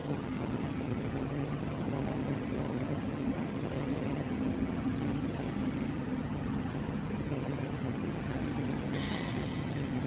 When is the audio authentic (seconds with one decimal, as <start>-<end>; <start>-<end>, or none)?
none